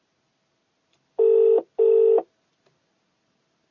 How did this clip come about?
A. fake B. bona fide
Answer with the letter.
B